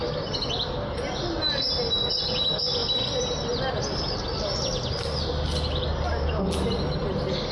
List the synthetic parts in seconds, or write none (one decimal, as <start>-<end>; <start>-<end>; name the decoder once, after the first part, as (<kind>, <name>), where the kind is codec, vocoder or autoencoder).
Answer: none